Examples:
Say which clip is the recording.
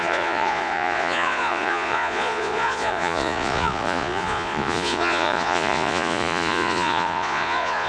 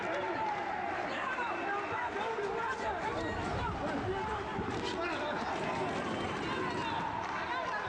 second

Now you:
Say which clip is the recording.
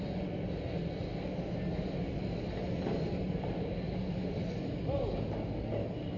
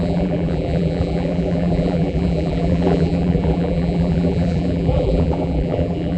first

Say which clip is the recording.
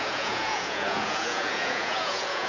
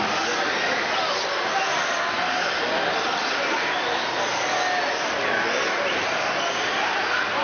second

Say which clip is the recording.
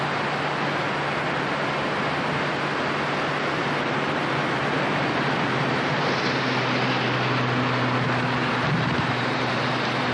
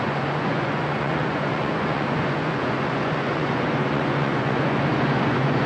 first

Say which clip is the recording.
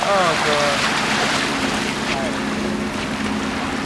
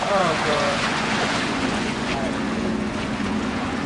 first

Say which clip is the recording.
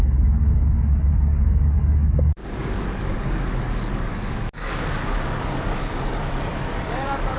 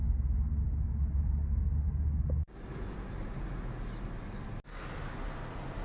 second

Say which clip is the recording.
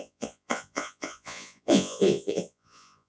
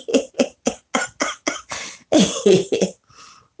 second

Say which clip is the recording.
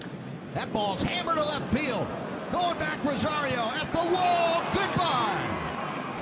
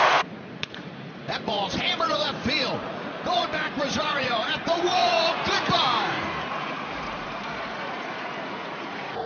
first